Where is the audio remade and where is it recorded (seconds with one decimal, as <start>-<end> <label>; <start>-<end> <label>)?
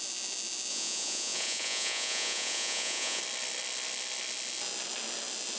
0.0-0.7 recorded; 0.7-3.2 remade; 3.2-5.6 recorded